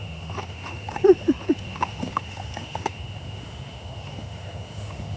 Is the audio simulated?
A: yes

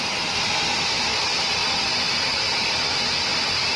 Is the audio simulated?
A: no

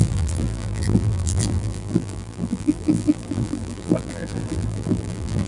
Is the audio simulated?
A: yes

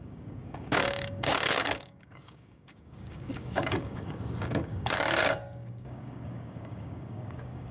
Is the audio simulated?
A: yes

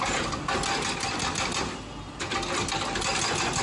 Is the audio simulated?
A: no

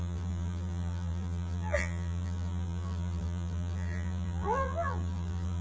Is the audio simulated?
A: yes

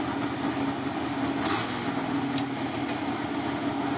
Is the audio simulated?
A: no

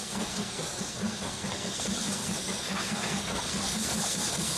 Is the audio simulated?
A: yes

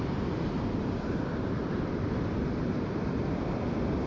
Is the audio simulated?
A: yes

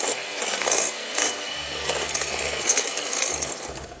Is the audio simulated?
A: yes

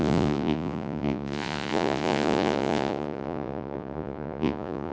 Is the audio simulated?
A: yes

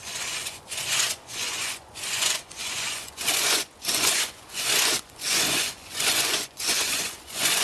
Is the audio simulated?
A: yes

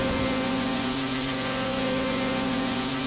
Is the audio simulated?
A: yes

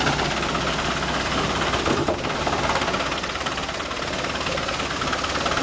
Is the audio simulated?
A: no